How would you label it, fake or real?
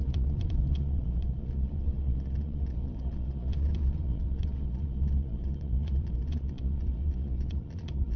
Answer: fake